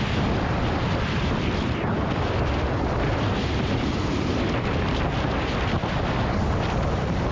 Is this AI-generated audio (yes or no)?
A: yes